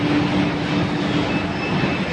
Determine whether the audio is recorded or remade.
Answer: recorded